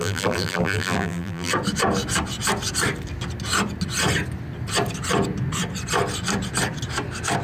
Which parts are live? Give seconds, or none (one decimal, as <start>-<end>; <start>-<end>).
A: 1.5-7.4